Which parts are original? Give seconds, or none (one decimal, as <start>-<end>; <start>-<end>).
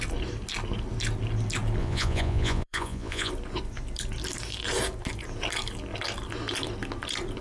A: 0.0-1.8; 3.3-7.4